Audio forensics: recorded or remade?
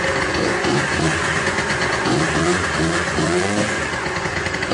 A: remade